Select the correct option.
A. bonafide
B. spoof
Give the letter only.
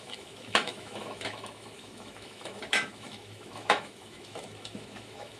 B